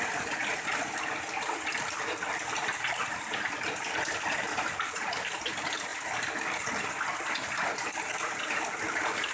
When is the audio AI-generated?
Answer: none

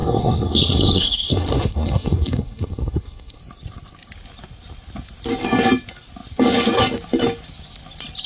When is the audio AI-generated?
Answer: 0.0-3.4 (codec, SNAC)

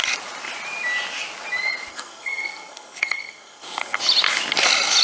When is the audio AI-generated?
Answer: 1.9-4.0 (codec, SNAC)

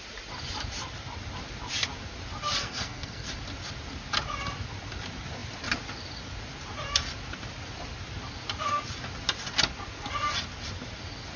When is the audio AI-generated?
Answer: 2.6-3.3 (codec, SNAC)

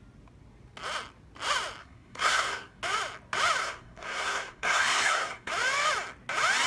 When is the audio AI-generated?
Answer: 1.8-2.8 (codec, SNAC); 3.6-5.5